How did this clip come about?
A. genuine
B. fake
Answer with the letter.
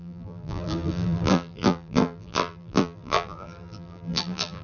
B